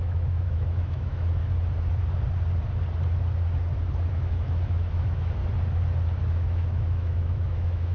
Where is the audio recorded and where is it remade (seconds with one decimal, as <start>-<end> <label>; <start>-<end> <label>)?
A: 0.0-1.4 remade; 1.4-4.1 recorded; 4.1-5.4 remade; 5.4-6.3 recorded; 6.3-7.9 remade